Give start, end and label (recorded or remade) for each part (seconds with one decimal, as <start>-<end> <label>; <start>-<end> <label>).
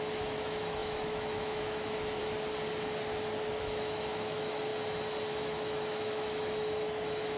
0.0-2.2 remade; 2.2-3.6 recorded; 3.6-4.7 remade; 4.7-5.3 recorded; 5.3-7.4 remade